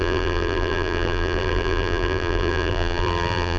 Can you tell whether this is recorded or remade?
remade